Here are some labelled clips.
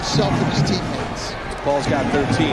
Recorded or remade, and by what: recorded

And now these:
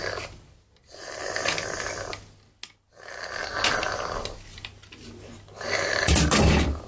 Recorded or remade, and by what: recorded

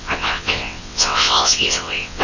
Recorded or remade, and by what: remade, vocoder, WaveNeXt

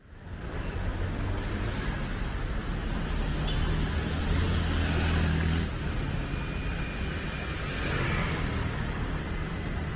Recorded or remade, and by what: recorded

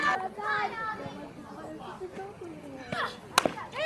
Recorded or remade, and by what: recorded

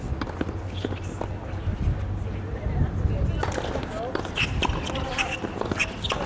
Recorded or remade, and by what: recorded